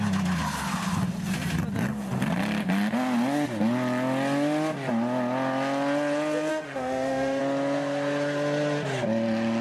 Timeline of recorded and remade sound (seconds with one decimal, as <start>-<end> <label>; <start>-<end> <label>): 0.0-6.5 recorded; 6.5-7.4 remade; 7.4-9.6 recorded